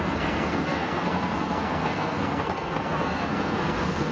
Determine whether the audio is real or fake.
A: fake